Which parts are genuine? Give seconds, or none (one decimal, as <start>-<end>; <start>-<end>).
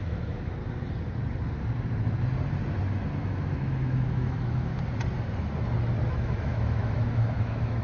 0.6-3.2; 4.7-6.1